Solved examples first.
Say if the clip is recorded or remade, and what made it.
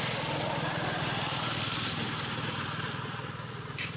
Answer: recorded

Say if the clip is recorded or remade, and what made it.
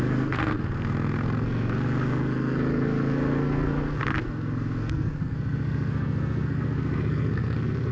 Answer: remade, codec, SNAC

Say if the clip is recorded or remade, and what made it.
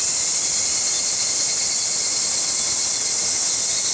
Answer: recorded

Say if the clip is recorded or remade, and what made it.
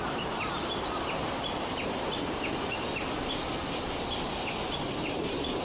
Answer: recorded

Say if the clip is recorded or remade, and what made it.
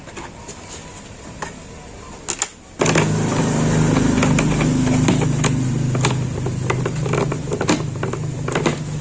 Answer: recorded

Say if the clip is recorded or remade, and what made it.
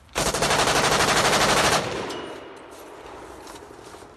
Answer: recorded